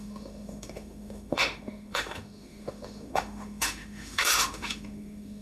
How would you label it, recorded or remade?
remade